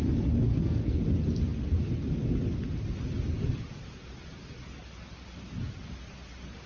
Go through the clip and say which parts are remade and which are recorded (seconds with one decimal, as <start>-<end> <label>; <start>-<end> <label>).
0.0-0.5 recorded; 0.5-1.0 remade; 1.0-6.7 recorded